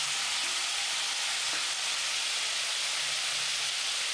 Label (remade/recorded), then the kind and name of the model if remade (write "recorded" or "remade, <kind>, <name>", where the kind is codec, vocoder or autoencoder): recorded